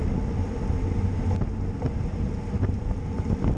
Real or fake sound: real